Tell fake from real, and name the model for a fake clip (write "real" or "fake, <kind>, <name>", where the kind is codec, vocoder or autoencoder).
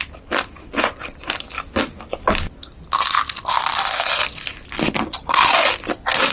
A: real